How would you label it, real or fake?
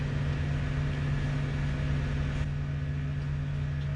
real